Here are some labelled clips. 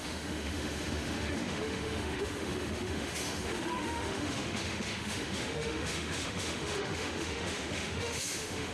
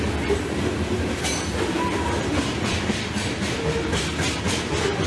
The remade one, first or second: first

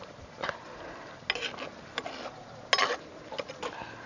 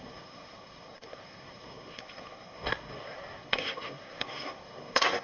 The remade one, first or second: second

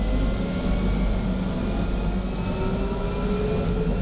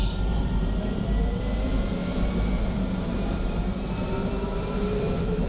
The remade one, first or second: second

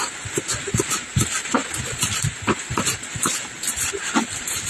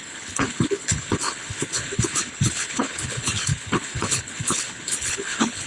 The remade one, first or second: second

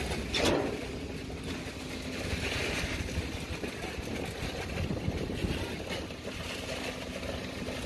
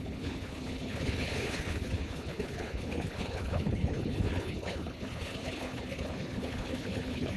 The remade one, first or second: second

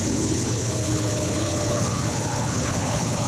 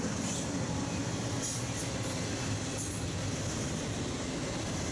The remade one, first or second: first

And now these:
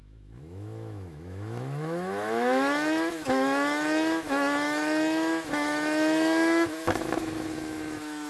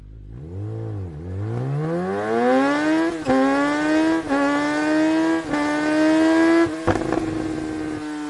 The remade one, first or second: first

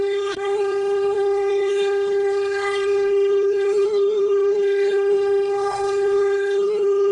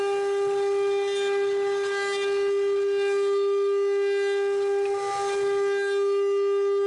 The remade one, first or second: first